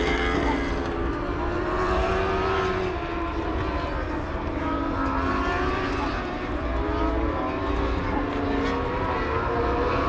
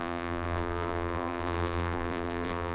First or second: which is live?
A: first